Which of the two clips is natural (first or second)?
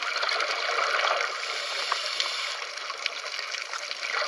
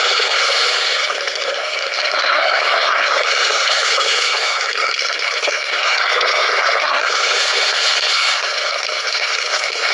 first